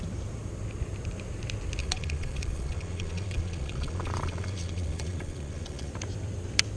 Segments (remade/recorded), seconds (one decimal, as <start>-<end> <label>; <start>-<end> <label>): 0.0-1.8 recorded; 1.8-5.9 remade; 5.9-6.8 recorded